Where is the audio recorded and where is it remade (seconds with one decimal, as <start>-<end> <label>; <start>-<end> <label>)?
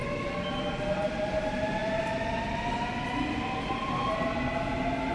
0.0-5.1 recorded